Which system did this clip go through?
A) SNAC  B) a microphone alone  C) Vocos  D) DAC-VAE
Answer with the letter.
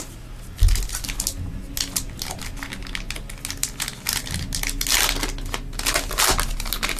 B